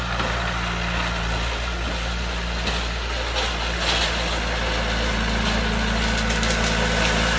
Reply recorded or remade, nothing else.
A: recorded